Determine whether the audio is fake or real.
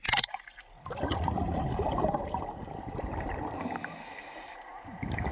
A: real